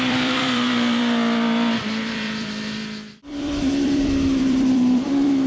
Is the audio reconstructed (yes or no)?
yes